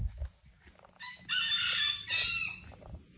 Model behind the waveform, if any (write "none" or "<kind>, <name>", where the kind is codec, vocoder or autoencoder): none